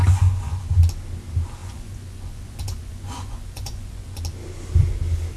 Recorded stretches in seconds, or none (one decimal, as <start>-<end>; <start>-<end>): 0.6-1.6; 4.2-5.4